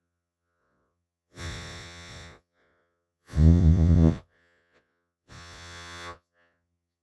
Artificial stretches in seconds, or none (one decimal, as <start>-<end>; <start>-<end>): 0.0-7.0